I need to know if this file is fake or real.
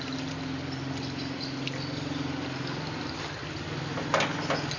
real